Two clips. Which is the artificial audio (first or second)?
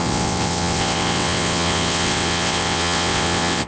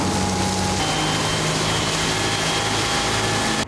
first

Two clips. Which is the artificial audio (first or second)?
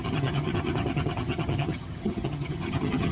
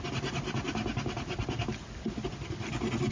first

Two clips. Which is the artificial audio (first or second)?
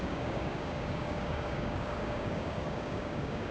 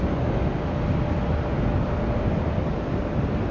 first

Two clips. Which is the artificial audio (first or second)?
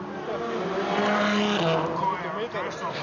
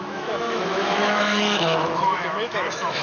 second